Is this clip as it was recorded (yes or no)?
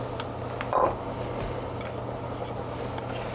yes